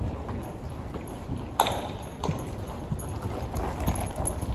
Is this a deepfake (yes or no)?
no